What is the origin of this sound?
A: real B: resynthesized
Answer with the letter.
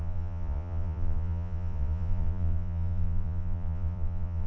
B